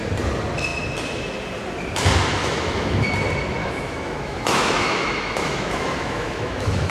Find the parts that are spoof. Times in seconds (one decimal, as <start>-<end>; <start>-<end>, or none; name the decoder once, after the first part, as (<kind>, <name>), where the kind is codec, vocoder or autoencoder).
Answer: 2.4-3.1 (autoencoder, DAC-VAE); 3.6-6.9